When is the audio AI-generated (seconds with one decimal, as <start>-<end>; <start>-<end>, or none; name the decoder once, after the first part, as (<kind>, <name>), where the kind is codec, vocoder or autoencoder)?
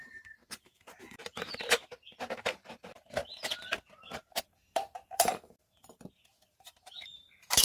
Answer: 0.0-1.2 (vocoder, BigVGAN v2); 2.3-3.2; 4.4-7.6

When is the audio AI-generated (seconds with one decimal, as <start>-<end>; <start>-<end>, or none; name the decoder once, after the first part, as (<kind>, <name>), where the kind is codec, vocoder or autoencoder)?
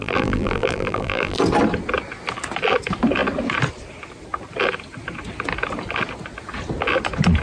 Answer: 0.0-1.4 (vocoder, BigVGAN v2)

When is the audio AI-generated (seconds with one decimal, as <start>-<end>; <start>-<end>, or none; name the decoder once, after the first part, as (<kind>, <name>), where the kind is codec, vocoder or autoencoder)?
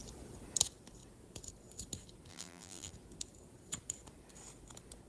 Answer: 2.3-2.9 (vocoder, BigVGAN v2)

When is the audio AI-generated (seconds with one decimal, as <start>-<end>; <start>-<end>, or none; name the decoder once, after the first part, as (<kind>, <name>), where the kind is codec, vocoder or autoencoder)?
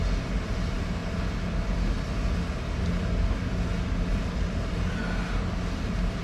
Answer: 0.0-1.0 (vocoder, BigVGAN v2); 4.1-5.0; 5.7-6.2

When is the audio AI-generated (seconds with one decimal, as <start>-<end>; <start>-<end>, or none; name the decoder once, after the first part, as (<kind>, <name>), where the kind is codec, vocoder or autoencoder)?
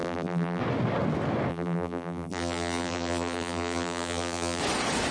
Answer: 0.0-0.6 (vocoder, BigVGAN v2); 1.5-4.6